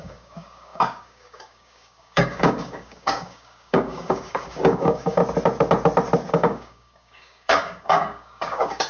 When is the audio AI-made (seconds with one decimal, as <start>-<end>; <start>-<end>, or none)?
0.0-5.2; 6.3-8.9